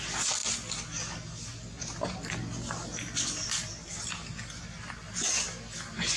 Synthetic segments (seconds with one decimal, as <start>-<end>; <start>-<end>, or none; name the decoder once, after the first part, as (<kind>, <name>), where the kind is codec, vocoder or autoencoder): none

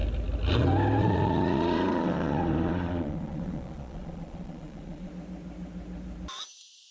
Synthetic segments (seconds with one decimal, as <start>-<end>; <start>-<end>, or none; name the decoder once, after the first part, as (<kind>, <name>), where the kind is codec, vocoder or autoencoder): 1.0-5.1 (vocoder, Vocos)

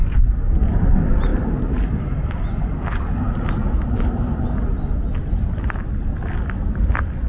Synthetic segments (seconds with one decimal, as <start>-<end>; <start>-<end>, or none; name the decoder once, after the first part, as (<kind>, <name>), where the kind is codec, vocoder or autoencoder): none

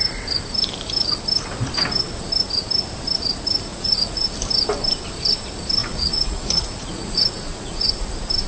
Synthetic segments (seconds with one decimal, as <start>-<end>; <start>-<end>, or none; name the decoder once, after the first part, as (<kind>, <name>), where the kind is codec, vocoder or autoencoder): 3.7-4.3 (vocoder, Vocos); 5.8-7.9